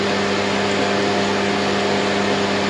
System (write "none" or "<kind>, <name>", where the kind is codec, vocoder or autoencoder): none